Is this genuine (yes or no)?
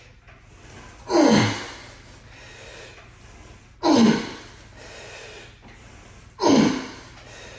yes